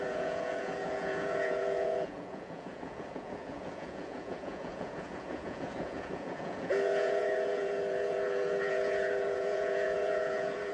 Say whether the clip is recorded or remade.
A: remade